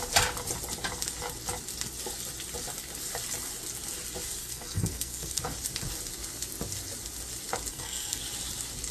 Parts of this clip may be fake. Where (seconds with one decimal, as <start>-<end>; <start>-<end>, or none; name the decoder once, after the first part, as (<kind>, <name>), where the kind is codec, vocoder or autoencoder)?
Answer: 4.4-5.4 (codec, SNAC); 7.7-8.2